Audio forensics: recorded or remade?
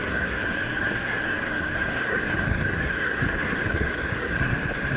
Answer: remade